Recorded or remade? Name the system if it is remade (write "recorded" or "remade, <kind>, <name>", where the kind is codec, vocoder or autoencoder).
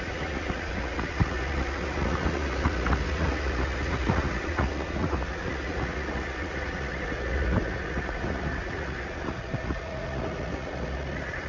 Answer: remade, vocoder, Vocos